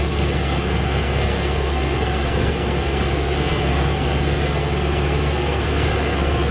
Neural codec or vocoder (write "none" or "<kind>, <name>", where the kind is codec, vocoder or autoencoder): codec, SNAC